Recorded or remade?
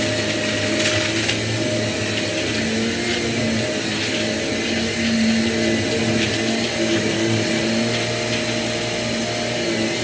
recorded